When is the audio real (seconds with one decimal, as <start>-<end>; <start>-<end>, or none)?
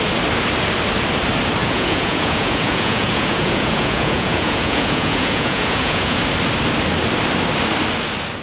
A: 0.0-1.6; 6.2-8.4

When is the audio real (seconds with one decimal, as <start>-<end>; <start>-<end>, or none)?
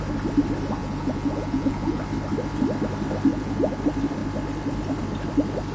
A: 0.0-0.8; 2.0-3.3; 3.8-5.7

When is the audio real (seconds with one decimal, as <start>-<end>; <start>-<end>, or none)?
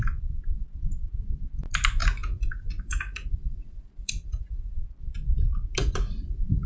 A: 0.0-2.0; 4.7-5.8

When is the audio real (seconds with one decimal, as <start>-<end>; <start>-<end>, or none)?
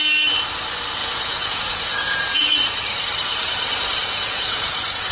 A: 0.0-1.0; 2.7-4.0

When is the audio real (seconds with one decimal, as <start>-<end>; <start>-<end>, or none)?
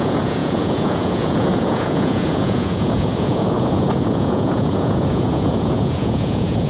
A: none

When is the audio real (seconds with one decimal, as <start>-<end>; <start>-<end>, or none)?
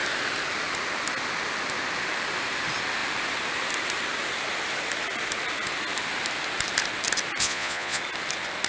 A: 0.0-7.4; 8.0-8.7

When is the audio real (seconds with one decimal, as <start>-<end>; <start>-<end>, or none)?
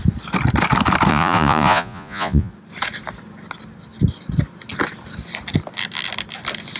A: 0.0-1.1; 2.5-6.8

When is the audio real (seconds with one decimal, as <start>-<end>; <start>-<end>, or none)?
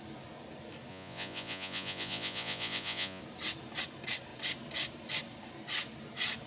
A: 0.0-0.9; 3.2-6.5